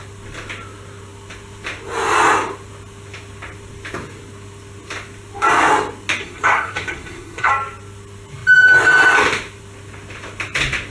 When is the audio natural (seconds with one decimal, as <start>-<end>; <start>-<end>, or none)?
0.0-6.2; 7.5-10.9